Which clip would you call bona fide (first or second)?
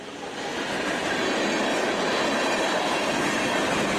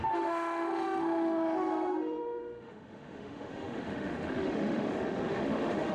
first